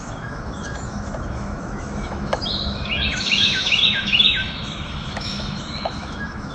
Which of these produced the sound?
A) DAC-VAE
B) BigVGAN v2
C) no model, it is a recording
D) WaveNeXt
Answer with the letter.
A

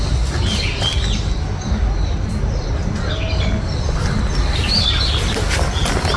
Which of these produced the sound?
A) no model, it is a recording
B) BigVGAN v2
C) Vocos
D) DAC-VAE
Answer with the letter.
A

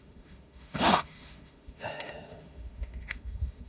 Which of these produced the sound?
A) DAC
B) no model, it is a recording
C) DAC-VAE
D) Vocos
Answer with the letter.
C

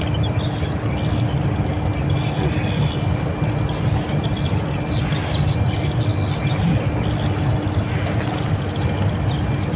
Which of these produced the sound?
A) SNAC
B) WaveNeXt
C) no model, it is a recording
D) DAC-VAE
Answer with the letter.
C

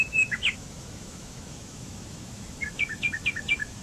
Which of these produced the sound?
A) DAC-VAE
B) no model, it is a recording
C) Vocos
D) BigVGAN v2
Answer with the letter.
A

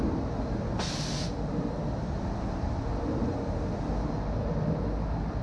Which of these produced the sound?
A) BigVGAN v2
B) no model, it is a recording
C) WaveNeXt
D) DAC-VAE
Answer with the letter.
B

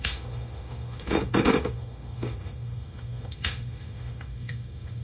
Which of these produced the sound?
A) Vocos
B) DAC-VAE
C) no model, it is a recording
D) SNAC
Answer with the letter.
B